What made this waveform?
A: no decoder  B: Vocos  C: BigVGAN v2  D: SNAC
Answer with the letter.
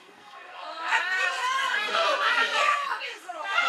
D